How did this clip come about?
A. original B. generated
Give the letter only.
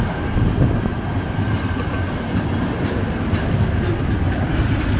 A